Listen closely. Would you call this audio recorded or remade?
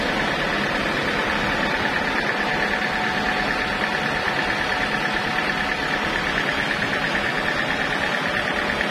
recorded